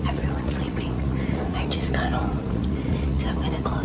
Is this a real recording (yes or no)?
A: no